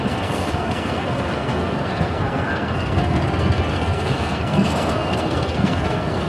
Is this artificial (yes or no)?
yes